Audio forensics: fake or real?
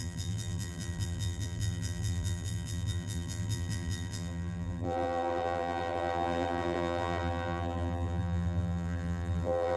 fake